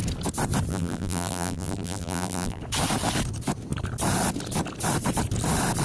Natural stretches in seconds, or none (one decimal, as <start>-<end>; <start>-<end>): 0.0-0.7; 2.6-5.8